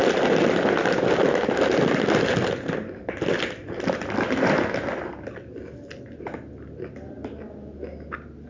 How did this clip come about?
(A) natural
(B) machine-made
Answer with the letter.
A